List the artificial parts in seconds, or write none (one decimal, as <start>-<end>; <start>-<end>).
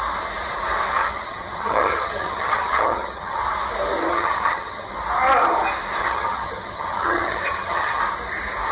1.0-3.4; 4.1-4.9; 6.0-8.0